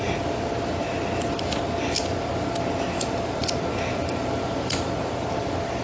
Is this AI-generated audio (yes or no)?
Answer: no